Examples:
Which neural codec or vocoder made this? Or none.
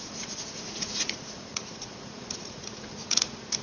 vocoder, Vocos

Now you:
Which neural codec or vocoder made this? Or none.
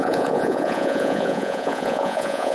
vocoder, Vocos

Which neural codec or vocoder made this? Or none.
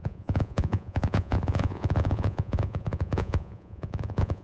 vocoder, Vocos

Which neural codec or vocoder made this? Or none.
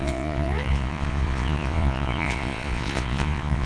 vocoder, Vocos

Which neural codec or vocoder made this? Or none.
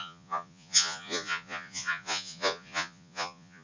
vocoder, Vocos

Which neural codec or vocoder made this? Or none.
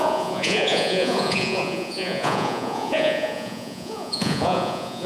vocoder, Vocos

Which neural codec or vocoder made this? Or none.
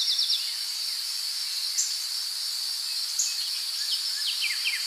none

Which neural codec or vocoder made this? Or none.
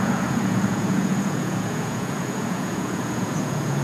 vocoder, Vocos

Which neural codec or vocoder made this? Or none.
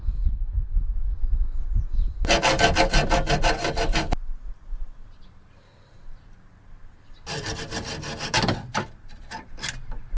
none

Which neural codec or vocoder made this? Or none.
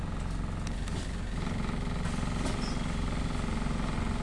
none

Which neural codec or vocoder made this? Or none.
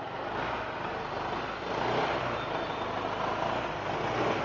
none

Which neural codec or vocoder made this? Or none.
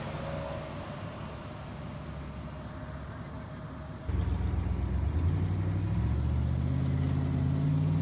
none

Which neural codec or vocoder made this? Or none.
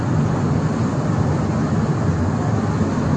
none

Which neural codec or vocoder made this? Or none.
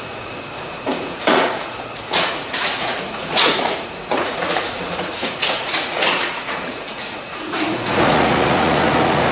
vocoder, Vocos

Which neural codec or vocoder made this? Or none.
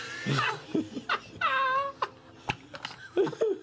none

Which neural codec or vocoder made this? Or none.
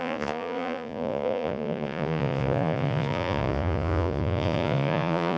vocoder, Vocos